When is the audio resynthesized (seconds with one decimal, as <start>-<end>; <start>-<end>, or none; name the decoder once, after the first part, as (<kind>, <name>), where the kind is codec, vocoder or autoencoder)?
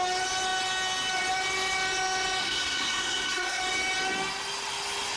2.4-3.6 (codec, SNAC)